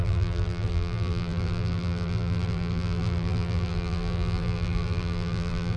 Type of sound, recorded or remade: remade